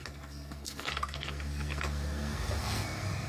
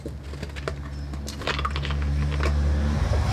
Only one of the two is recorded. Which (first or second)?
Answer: second